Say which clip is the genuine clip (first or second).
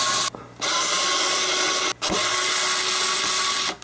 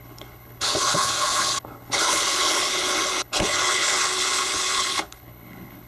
first